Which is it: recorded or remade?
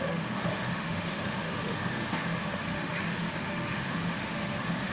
remade